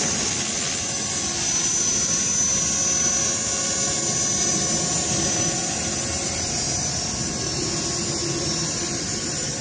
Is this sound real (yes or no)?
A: yes